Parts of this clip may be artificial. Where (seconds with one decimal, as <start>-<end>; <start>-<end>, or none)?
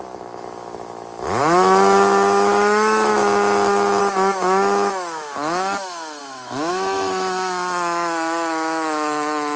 0.0-3.1; 4.0-9.6